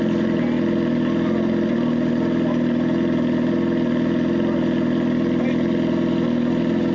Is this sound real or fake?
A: real